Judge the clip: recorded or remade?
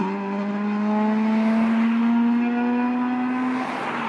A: recorded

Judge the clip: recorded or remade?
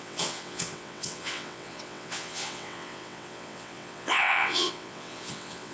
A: remade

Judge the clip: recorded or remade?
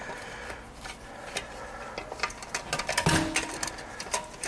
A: recorded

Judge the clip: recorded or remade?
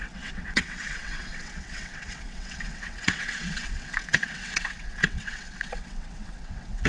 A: remade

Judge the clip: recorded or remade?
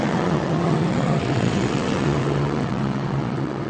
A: remade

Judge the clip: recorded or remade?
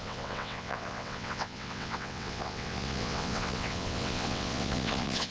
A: remade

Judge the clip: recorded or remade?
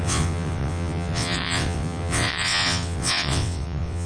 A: remade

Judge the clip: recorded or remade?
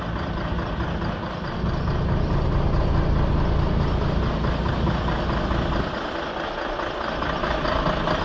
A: recorded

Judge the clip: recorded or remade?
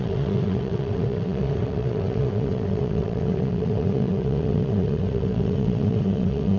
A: remade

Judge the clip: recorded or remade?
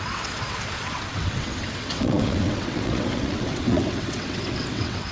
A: remade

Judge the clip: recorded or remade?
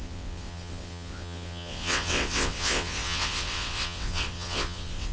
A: remade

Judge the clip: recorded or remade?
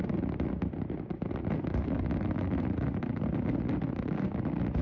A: recorded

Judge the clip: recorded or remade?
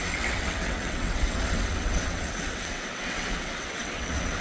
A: remade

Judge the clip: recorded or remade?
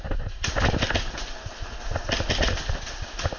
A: recorded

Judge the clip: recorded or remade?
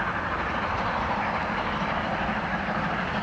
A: recorded